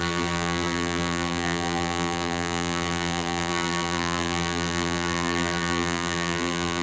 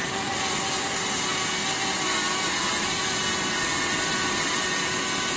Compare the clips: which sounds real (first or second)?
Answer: second